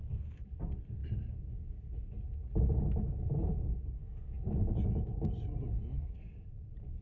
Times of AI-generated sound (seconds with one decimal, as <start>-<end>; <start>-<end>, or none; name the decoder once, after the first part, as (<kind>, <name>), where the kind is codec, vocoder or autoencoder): none